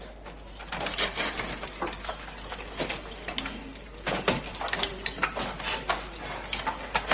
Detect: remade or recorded recorded